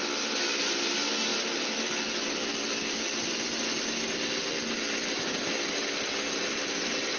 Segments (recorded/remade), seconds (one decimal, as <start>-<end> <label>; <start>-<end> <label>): 0.0-7.2 recorded